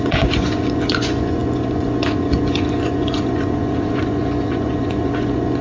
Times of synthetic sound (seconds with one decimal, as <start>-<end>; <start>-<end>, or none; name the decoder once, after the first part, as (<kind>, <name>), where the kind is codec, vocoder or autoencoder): 0.0-5.6 (vocoder, Vocos)